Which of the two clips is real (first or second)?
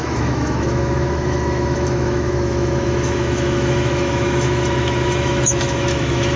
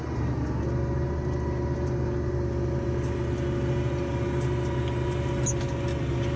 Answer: second